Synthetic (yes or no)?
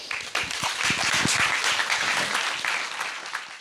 no